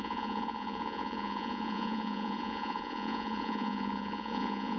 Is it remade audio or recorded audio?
remade